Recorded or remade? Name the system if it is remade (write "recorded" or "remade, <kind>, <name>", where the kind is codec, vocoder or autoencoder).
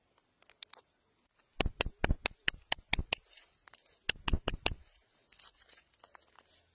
recorded